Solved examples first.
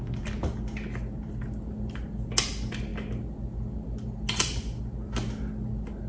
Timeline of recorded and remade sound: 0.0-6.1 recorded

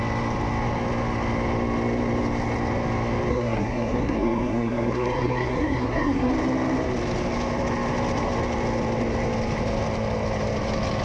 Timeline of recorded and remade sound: 0.0-3.3 recorded; 3.3-6.3 remade; 6.3-11.0 recorded

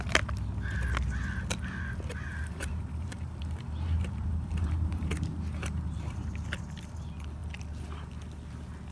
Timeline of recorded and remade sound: 0.0-2.3 recorded; 2.3-6.3 remade; 6.3-8.9 recorded

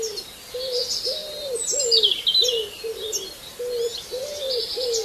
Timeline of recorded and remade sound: 0.0-5.0 recorded

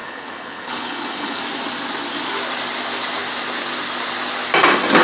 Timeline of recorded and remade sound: 0.0-1.4 remade; 1.4-5.0 recorded

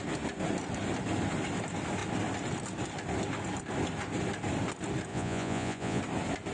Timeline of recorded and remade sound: 0.0-5.1 recorded; 5.1-6.0 remade; 6.0-6.5 recorded

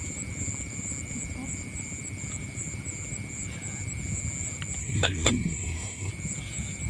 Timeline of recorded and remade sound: 0.0-4.8 recorded; 4.8-6.1 remade; 6.1-6.9 recorded

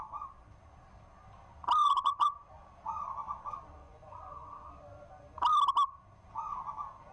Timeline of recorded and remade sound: 0.0-1.8 recorded; 1.8-2.7 remade; 2.7-3.8 recorded; 3.8-4.7 remade; 4.7-7.1 recorded